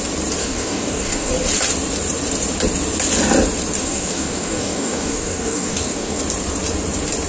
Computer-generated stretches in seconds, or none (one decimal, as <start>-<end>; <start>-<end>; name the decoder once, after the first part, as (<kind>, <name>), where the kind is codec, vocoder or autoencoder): 0.4-1.3 (codec, DAC); 3.8-6.2